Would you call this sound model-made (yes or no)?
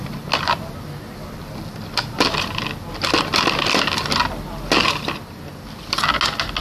no